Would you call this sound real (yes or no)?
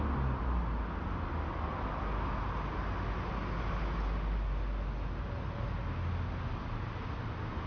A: yes